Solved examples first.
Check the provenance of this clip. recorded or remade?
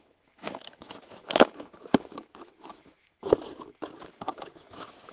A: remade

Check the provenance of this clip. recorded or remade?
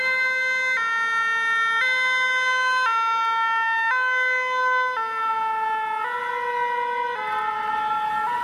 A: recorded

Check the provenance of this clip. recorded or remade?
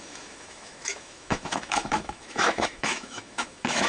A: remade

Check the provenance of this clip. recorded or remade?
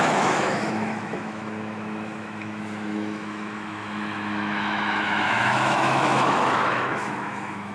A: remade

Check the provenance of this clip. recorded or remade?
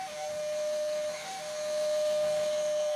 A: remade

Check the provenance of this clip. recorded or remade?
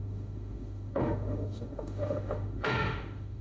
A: remade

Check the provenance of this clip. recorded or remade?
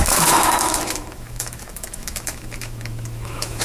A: remade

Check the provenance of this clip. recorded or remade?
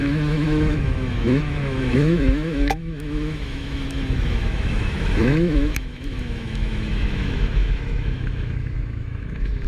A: remade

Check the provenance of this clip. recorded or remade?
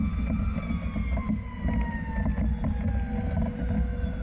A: recorded